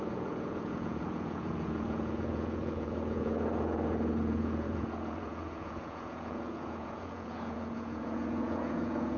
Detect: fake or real fake